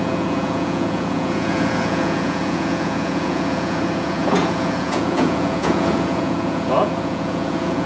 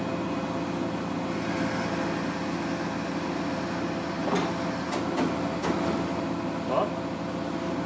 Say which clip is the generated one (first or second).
first